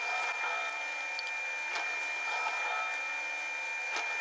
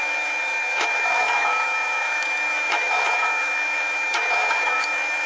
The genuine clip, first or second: first